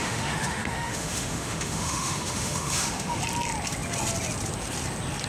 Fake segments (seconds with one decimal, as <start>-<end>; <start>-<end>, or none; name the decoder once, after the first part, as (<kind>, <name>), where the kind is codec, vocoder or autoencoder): 0.0-3.2 (autoencoder, DAC-VAE)